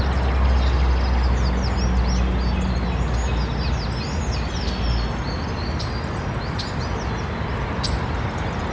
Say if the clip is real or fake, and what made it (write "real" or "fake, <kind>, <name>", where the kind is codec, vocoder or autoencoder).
real